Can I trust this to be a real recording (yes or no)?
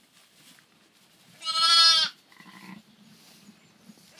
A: yes